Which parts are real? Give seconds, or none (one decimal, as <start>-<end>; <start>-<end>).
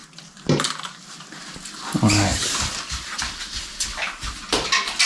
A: 0.0-2.3; 4.3-5.1